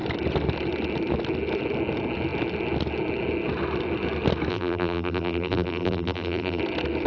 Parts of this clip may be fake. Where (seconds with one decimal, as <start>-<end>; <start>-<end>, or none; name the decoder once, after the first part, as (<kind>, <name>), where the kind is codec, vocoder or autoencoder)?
4.5-6.6 (vocoder, BigVGAN v2)